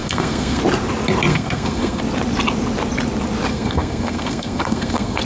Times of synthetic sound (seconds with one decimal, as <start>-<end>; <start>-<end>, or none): 0.0-0.6; 1.3-2.0; 3.5-5.2